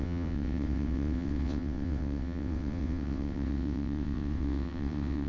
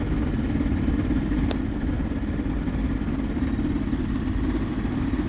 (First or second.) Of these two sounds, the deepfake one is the first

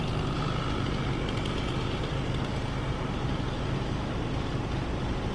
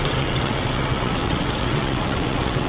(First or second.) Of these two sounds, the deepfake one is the second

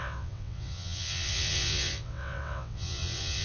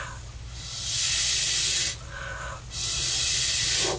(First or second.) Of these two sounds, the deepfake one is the first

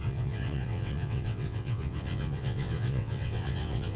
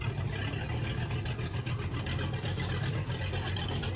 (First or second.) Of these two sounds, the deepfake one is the first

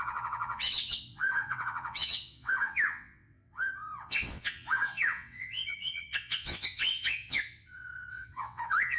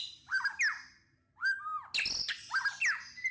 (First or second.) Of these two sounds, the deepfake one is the first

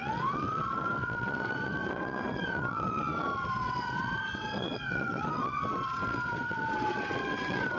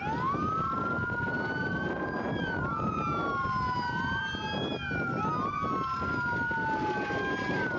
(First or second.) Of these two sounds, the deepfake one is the first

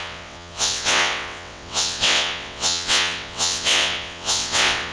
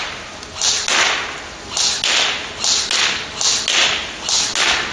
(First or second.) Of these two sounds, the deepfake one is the first